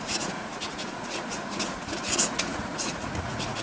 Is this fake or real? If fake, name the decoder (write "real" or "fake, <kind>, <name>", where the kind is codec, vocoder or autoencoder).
fake, vocoder, Vocos